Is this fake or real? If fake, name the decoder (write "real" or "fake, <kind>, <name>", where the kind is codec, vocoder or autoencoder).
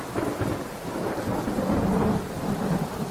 real